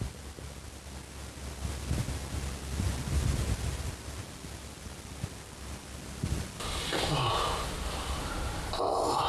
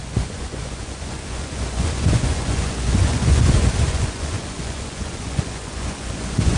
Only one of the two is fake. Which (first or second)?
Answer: second